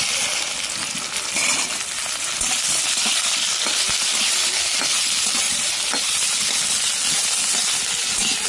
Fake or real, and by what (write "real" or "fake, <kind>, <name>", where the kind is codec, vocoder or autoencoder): real